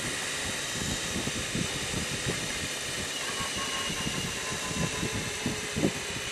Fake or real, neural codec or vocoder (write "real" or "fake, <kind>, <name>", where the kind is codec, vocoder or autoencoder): fake, vocoder, BigVGAN v2